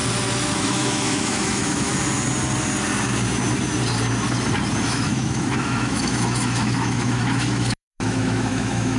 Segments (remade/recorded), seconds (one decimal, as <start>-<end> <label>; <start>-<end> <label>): 0.0-0.5 recorded; 0.5-1.9 remade; 1.9-4.8 recorded; 4.8-9.0 remade